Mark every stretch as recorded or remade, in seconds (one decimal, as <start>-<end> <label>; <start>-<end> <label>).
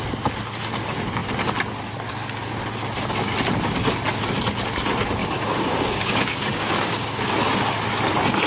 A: 0.0-5.2 recorded; 5.2-7.3 remade; 7.3-8.5 recorded